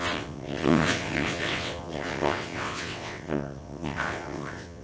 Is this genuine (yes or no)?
no